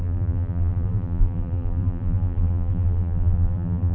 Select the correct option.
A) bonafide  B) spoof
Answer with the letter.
B